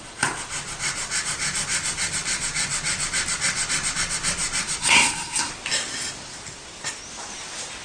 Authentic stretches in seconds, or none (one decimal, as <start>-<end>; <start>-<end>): 0.0-4.8; 5.5-7.8